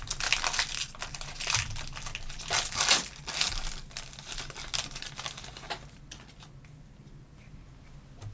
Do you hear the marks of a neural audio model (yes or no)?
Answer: no